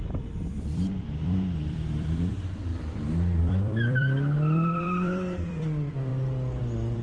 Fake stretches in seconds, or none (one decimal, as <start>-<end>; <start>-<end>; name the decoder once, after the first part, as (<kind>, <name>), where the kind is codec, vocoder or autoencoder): 0.0-6.1 (vocoder, BigVGAN v2); 6.6-7.0